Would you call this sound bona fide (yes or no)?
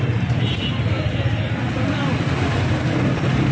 yes